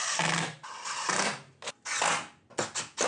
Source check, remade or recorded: recorded